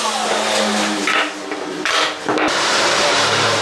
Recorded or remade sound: recorded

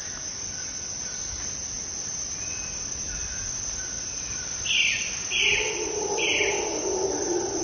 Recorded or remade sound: recorded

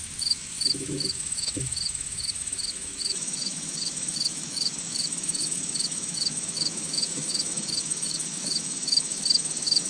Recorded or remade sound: remade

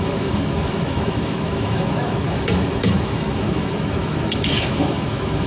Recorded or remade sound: remade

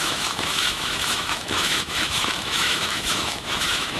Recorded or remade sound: remade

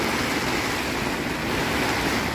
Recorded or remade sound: recorded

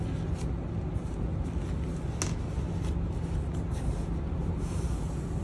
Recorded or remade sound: recorded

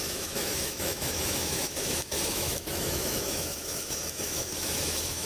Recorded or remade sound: remade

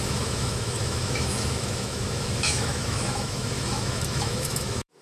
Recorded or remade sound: remade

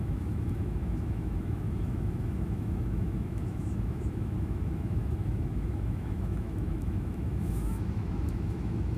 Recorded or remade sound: remade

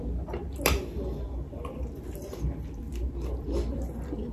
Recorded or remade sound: recorded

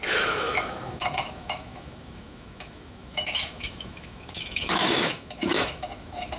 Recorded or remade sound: remade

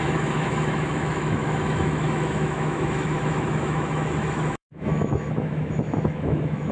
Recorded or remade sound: remade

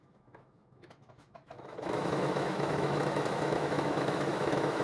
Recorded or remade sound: remade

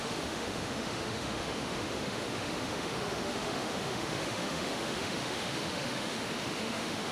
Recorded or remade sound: remade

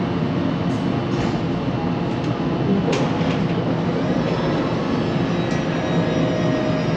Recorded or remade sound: recorded